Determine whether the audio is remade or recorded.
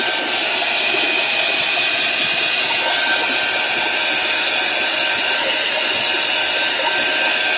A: recorded